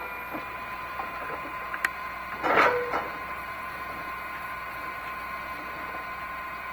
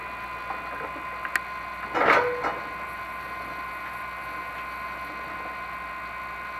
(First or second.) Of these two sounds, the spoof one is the first